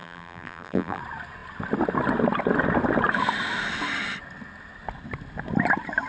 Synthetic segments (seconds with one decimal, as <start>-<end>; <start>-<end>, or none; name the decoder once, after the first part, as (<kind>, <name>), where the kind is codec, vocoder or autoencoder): 0.0-1.0 (vocoder, BigVGAN v2)